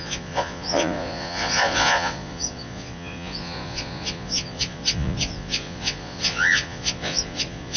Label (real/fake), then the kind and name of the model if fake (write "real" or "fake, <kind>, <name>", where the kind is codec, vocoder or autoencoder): fake, vocoder, Vocos